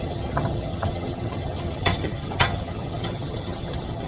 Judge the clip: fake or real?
fake